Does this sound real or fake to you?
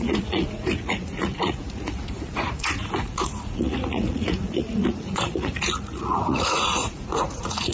fake